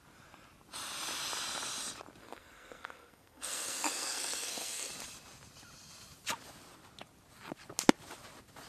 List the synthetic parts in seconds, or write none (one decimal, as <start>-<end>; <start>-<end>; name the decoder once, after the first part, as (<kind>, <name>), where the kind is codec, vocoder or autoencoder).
2.2-4.9 (codec, SNAC)